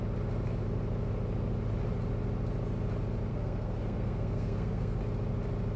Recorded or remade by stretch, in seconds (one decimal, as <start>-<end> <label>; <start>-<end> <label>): 0.0-3.3 recorded; 3.3-5.0 remade; 5.0-5.8 recorded